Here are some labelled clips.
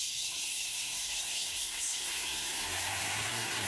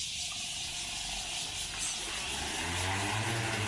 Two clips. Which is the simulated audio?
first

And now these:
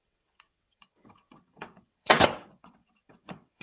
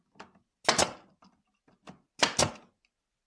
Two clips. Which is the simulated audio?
first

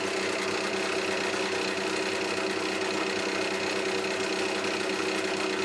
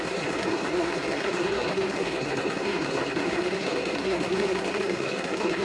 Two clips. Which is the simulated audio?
second